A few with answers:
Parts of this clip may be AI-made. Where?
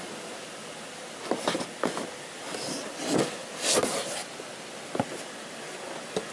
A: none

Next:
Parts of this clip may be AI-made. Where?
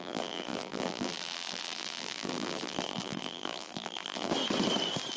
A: 0.0-4.3 (vocoder, BigVGAN v2)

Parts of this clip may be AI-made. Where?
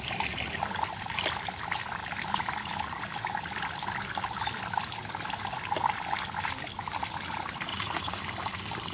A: 7.7-8.2 (vocoder, Vocos)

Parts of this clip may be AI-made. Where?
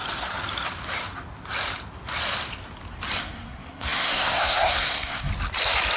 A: 3.2-5.3 (codec, SNAC)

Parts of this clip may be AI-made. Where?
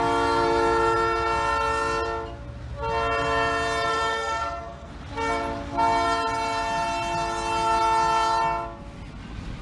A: 3.9-4.9 (codec, SNAC)